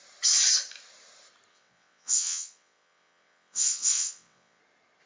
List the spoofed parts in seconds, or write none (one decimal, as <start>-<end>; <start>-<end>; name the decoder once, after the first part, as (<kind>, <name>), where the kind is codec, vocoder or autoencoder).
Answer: 1.5-4.6 (vocoder, WaveNeXt)